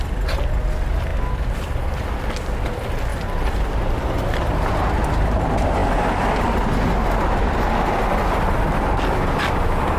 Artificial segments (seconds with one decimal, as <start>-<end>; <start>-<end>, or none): 3.1-4.9